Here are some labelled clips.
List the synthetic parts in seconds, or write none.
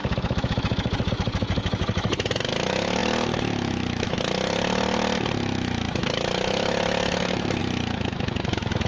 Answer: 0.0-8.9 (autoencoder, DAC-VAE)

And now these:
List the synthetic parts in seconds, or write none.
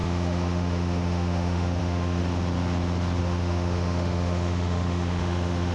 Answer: 0.0-2.2 (autoencoder, DAC-VAE); 3.2-5.7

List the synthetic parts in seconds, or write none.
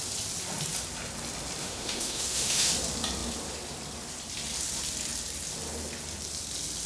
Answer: 1.6-2.7 (autoencoder, DAC-VAE)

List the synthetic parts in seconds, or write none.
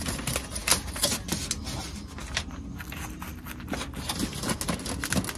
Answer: none